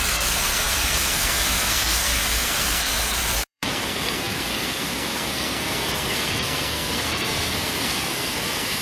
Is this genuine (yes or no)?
no